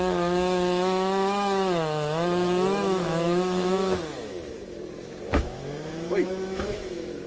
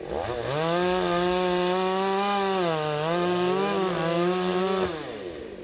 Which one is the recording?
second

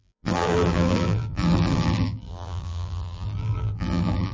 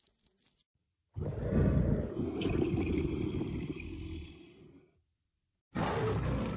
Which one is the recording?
second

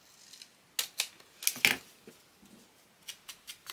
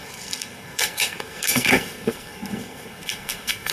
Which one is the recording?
first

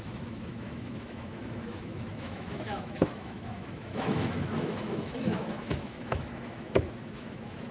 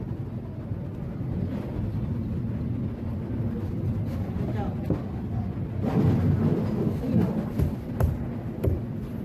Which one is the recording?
second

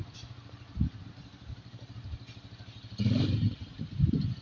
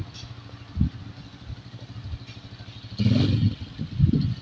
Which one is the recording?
second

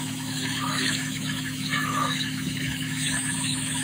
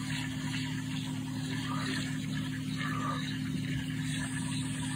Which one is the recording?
second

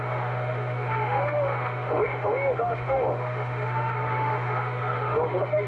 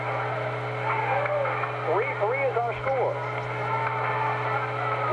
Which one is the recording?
second